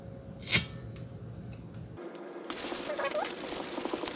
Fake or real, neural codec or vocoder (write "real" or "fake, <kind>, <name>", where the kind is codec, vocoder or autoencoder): real